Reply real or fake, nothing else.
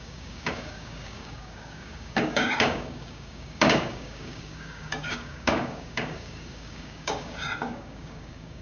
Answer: fake